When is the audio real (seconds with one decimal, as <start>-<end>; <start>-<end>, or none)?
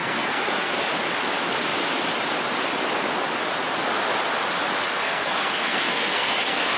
0.7-5.0